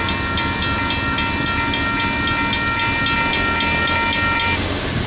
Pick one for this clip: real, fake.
real